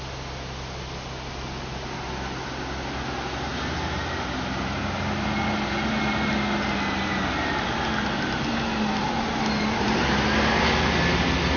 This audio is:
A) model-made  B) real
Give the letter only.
B